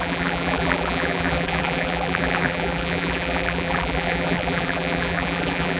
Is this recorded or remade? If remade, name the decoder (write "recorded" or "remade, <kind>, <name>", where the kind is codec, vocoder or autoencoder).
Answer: remade, vocoder, BigVGAN v2